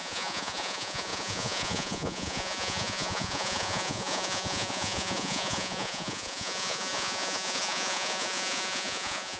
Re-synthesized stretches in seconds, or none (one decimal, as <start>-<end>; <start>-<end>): 0.0-9.4